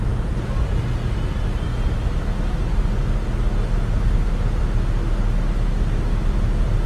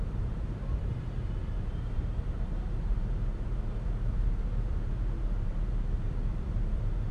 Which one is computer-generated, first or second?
second